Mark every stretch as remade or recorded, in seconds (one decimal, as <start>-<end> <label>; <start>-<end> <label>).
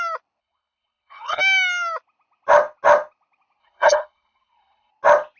0.0-0.4 recorded; 0.4-1.4 remade; 1.4-3.6 recorded; 3.6-4.9 remade; 4.9-5.4 recorded